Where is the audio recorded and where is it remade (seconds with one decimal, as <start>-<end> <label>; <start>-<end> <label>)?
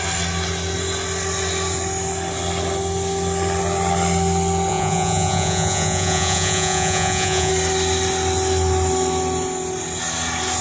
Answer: 0.0-4.7 recorded; 4.7-7.5 remade; 7.5-10.6 recorded